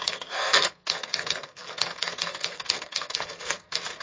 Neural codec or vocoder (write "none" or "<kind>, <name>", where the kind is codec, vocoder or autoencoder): codec, SNAC